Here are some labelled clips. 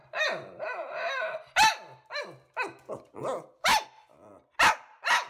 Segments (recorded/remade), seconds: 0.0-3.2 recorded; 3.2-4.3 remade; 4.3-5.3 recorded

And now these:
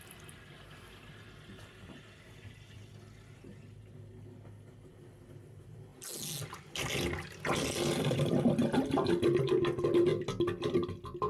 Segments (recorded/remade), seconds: 0.0-11.3 recorded

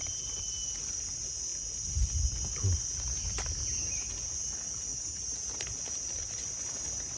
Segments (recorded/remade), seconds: 0.0-7.2 recorded

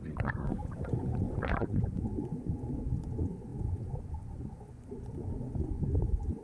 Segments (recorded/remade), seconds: 0.0-6.4 remade

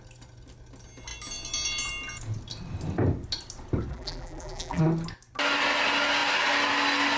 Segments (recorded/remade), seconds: 0.0-3.9 recorded; 3.9-4.8 remade; 4.8-7.2 recorded

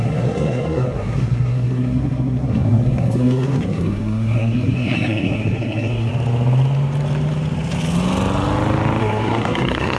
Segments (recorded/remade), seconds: 0.0-6.1 remade; 6.1-9.0 recorded; 9.0-10.0 remade

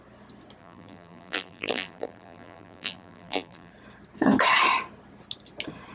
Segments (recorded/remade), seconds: 0.0-0.6 recorded; 0.6-3.7 remade; 3.7-5.9 recorded

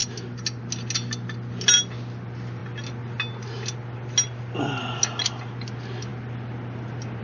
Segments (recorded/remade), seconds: 0.0-7.2 recorded